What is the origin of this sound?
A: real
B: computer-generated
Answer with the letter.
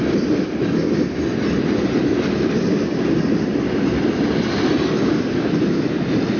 A